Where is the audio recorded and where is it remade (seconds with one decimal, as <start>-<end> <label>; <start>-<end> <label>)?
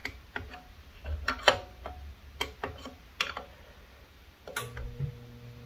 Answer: 0.0-5.7 recorded